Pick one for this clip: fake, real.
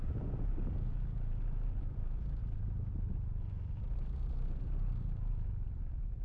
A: fake